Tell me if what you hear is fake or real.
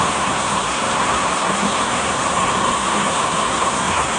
fake